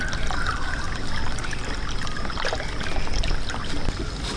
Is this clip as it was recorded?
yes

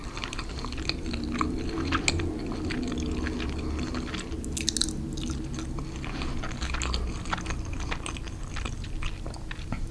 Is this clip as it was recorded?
yes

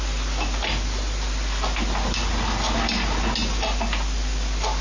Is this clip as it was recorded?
yes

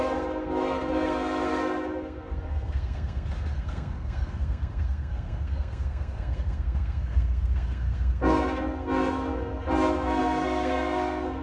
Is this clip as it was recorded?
no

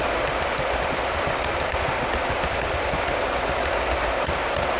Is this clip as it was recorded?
yes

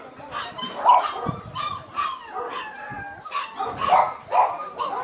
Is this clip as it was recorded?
yes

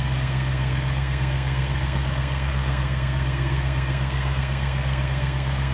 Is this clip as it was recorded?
no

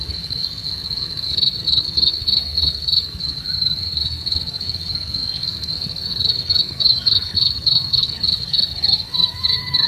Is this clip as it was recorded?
no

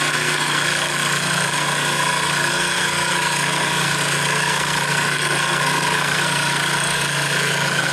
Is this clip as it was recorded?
no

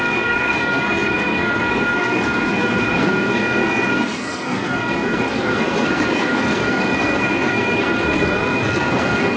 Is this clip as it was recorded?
no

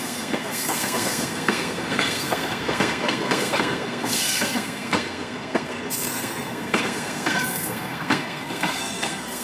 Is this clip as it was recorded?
no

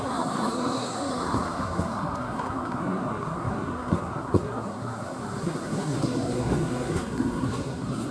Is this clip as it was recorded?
no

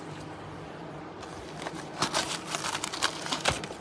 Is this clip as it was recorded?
yes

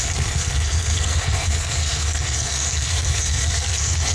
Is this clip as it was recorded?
no